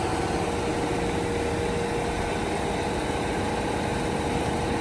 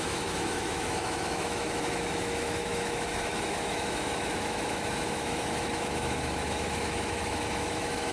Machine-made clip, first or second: second